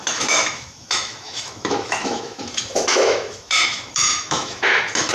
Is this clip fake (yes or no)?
yes